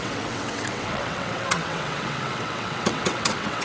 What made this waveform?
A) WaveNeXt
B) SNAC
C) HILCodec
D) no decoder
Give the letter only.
A